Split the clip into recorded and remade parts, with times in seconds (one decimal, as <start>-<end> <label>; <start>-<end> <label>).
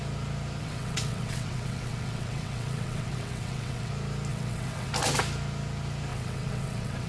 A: 0.0-0.6 recorded; 0.6-3.9 remade; 3.9-4.3 recorded; 4.3-4.9 remade; 4.9-6.1 recorded; 6.1-7.1 remade